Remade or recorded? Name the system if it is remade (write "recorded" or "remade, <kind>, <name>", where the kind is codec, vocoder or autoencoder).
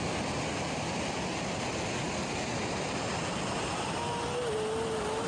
recorded